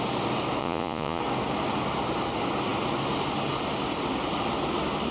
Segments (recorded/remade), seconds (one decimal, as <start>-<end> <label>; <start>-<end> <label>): 0.0-0.6 recorded; 0.6-1.2 remade; 1.2-5.1 recorded